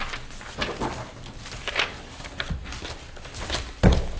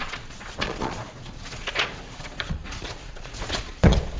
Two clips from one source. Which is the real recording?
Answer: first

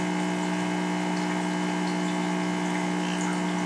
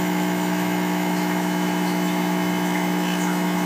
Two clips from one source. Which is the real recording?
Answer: first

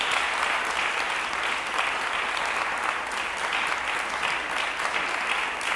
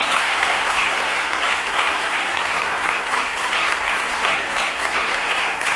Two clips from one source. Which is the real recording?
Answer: first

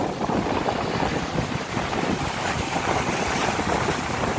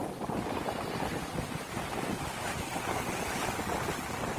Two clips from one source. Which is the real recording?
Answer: second